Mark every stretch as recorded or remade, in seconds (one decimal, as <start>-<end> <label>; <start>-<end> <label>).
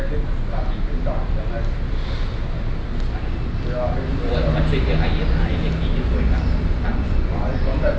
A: 0.0-6.9 recorded; 6.9-8.0 remade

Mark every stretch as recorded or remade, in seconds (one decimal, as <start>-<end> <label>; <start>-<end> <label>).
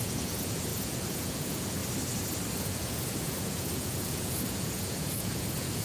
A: 0.0-1.8 remade; 1.8-2.5 recorded; 2.5-5.8 remade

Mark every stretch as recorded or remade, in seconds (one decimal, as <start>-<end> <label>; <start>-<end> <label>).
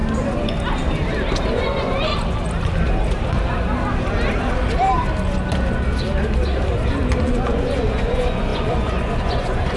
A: 0.0-1.5 recorded; 1.5-2.1 remade; 2.1-7.2 recorded; 7.2-9.8 remade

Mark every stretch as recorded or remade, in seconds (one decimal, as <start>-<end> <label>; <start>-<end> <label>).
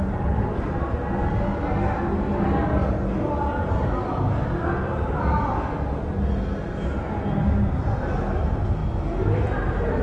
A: 0.0-10.0 recorded